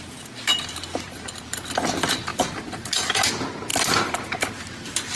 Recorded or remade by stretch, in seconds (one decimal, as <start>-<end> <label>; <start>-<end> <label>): 0.0-2.3 remade; 2.3-3.3 recorded; 3.3-5.2 remade